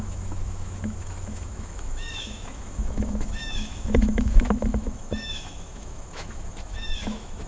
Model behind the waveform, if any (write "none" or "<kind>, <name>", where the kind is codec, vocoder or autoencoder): autoencoder, DAC-VAE